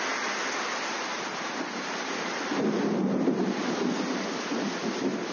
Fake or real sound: real